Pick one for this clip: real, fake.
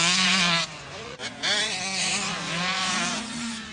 fake